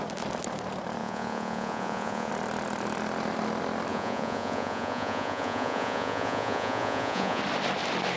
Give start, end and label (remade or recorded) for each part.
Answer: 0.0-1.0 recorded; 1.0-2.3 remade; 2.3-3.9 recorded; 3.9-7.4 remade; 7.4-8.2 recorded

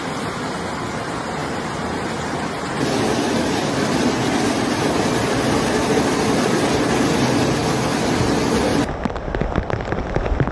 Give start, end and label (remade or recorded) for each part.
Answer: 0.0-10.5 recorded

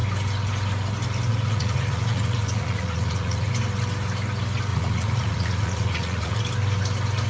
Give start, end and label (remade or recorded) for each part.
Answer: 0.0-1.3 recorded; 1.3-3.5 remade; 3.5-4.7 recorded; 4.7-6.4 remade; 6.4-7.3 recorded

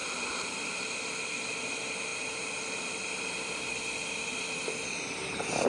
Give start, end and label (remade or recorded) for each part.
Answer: 0.0-5.7 recorded

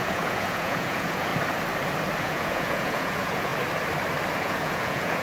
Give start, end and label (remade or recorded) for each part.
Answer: 0.0-1.3 remade; 1.3-2.2 recorded; 2.2-3.5 remade; 3.5-4.4 recorded; 4.4-5.2 remade

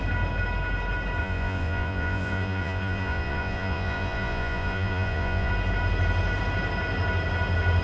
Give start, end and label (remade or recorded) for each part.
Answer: 0.0-1.2 recorded; 1.2-5.5 remade; 5.5-7.8 recorded

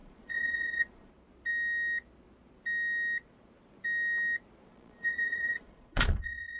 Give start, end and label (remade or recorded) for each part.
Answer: 0.0-1.1 remade; 1.1-4.7 recorded; 4.7-6.6 remade

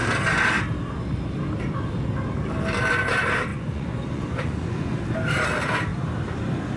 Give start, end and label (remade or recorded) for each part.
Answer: 0.0-3.5 recorded; 3.5-5.0 remade; 5.0-6.8 recorded